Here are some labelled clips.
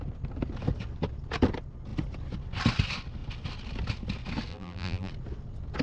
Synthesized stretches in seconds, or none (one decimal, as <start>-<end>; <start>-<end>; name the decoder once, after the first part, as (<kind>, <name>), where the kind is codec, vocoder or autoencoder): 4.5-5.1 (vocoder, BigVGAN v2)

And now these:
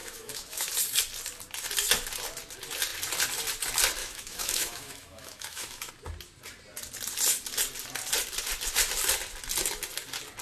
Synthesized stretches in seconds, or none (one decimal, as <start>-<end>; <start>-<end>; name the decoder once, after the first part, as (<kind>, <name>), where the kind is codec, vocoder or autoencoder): 0.0-0.7 (autoencoder, DAC-VAE); 4.0-5.9

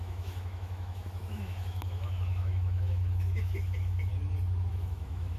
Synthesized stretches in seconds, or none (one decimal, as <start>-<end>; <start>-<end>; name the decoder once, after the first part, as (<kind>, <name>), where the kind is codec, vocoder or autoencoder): 0.0-4.1 (autoencoder, DAC-VAE); 4.7-5.4

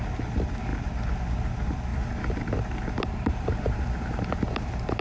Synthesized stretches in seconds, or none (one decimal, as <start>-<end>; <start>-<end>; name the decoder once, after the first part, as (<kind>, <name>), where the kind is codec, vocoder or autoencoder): 1.9-5.0 (vocoder, BigVGAN v2)